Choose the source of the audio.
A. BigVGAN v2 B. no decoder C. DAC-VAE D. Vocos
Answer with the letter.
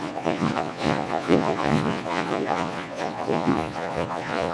D